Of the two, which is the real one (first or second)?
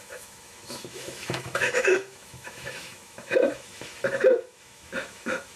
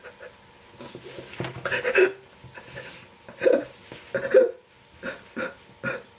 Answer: second